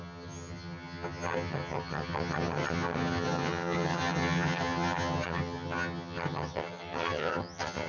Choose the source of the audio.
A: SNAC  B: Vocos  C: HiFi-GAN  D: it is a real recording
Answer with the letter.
C